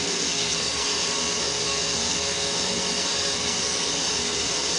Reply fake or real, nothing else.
fake